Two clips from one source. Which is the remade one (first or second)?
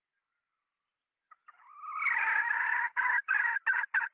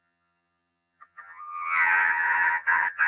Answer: second